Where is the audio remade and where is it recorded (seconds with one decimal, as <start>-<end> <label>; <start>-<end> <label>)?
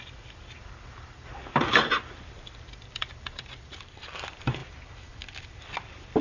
0.0-4.6 remade; 4.6-5.4 recorded; 5.4-6.2 remade